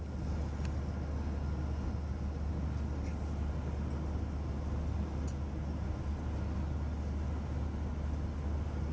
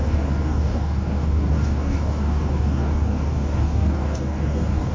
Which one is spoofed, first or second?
second